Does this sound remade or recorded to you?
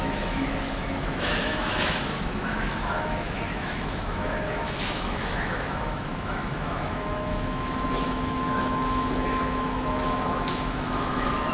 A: remade